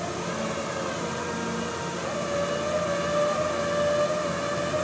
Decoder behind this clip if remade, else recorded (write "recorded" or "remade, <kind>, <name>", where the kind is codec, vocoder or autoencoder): recorded